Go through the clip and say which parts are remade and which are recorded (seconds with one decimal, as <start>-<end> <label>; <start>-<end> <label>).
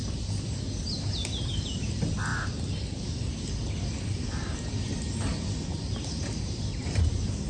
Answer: 0.0-7.5 recorded